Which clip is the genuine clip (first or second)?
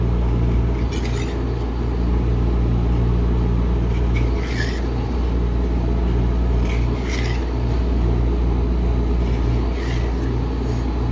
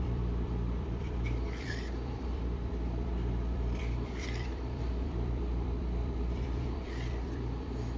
first